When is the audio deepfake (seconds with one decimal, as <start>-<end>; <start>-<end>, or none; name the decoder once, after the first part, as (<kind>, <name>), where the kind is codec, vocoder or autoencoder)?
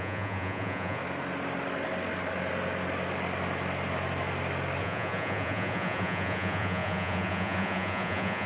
0.0-1.0 (vocoder, Vocos); 4.8-8.5